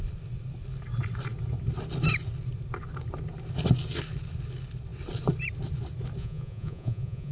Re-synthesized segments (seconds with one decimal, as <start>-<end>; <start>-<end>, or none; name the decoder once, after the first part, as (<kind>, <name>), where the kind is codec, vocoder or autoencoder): 6.2-7.3 (vocoder, Vocos)